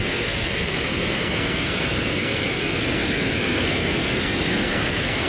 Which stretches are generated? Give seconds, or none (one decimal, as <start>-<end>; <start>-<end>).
0.0-5.3